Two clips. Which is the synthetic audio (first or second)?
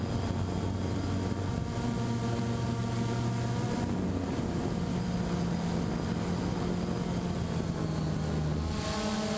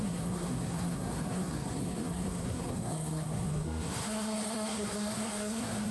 second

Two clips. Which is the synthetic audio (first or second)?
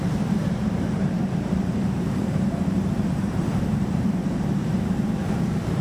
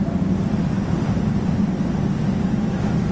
first